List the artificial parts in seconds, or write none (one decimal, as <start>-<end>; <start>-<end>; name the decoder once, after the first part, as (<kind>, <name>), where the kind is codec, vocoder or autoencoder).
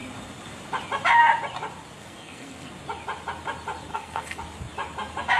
2.0-2.7 (codec, SNAC); 3.9-4.4